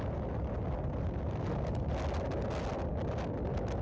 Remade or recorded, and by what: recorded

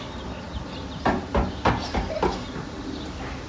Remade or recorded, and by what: recorded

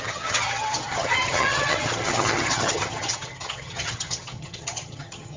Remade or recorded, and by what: remade, vocoder, HiFi-GAN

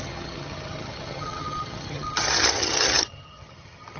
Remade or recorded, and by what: remade, vocoder, HiFi-GAN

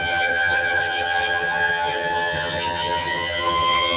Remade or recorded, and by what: remade, vocoder, HiFi-GAN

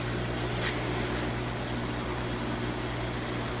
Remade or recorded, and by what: recorded